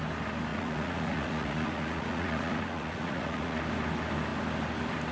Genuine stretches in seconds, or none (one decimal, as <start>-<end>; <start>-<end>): 0.0-0.5; 3.6-5.1